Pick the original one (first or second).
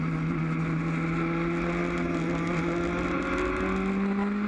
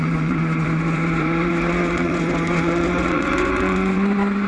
first